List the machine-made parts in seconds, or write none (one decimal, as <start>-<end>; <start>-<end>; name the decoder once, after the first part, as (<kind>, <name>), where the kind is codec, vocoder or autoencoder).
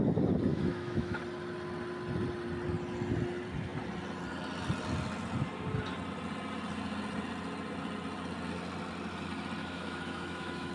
0.5-1.2 (autoencoder, DAC-VAE); 9.6-10.7